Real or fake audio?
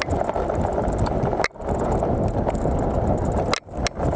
real